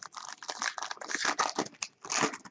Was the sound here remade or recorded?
recorded